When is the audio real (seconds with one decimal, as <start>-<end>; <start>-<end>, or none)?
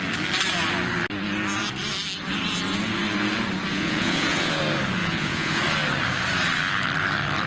0.0-3.7; 4.6-5.0; 5.6-7.5